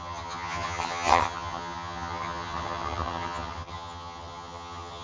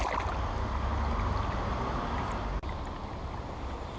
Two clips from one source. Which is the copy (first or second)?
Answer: first